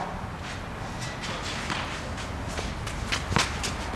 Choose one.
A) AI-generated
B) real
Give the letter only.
B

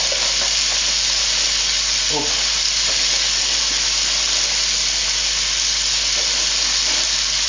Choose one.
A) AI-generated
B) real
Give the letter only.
B